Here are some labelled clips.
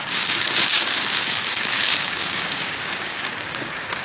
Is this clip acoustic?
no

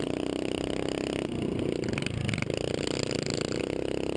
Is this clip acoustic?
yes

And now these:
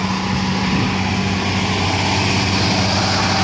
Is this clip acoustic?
yes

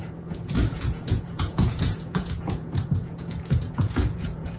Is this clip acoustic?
no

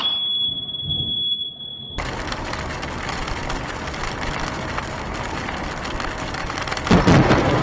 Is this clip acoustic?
no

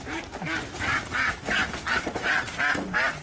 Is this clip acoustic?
yes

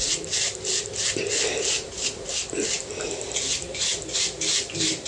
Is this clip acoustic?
yes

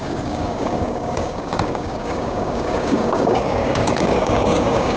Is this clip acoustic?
no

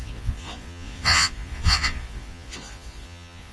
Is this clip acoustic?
no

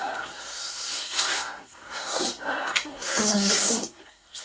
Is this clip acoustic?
no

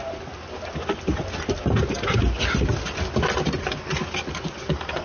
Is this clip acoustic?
yes